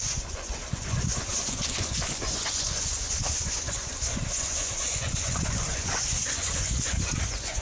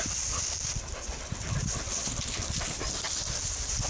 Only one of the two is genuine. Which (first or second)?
second